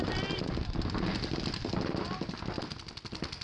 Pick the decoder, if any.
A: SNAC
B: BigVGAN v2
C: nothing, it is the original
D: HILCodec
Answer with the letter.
C